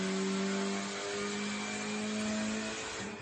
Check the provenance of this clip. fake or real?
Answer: real